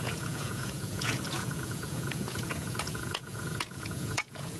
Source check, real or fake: fake